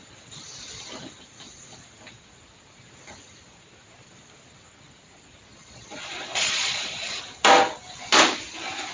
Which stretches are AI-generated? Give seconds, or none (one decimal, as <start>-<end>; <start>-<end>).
5.5-7.2